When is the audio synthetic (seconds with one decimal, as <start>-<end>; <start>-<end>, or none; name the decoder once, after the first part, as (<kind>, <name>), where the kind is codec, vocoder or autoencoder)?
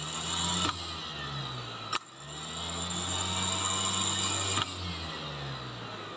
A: none